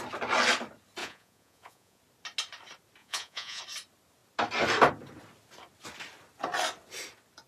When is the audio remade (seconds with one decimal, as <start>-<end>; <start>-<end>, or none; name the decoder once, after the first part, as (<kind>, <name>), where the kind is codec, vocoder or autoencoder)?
1.0-2.0 (vocoder, Vocos); 3.0-3.6

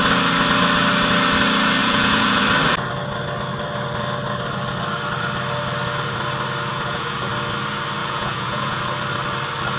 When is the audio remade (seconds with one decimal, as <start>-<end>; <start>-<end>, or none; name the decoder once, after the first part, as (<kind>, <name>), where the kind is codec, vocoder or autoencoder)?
1.8-2.4 (vocoder, Vocos); 6.7-7.3; 8.0-8.8

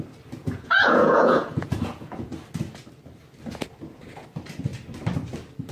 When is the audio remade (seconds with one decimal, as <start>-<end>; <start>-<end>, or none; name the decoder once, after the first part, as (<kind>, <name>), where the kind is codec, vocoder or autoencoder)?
0.4-2.3 (vocoder, Vocos)

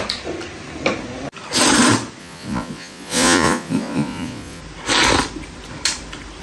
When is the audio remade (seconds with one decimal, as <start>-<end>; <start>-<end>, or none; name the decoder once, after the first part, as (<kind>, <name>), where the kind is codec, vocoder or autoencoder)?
2.2-4.6 (vocoder, Vocos)

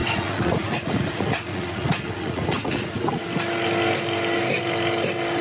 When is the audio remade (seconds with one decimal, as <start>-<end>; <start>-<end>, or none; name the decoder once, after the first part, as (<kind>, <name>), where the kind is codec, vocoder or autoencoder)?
0.0-3.2 (vocoder, Vocos)

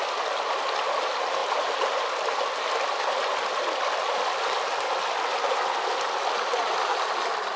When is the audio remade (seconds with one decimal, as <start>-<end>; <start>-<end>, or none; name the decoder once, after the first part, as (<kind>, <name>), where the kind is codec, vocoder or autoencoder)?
none

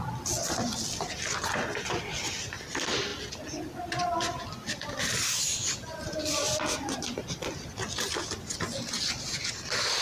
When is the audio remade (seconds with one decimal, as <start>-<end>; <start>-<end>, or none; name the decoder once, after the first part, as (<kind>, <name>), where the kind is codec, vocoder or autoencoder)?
none

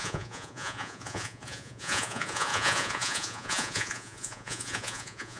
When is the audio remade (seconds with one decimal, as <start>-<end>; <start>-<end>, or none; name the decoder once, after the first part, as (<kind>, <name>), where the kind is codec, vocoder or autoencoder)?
0.0-5.4 (vocoder, Vocos)